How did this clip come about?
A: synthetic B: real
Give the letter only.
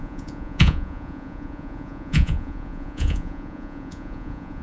A